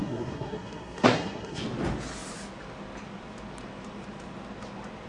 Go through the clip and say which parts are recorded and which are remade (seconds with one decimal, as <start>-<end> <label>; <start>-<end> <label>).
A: 0.0-1.6 remade; 1.6-5.1 recorded